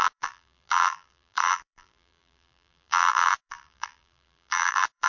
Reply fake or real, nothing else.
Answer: fake